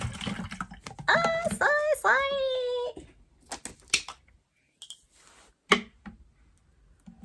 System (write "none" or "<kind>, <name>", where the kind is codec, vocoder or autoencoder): none